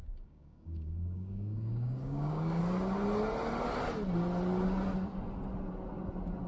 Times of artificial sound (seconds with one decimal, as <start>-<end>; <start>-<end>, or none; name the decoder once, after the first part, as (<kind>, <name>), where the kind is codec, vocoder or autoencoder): 0.0-2.6 (codec, DAC)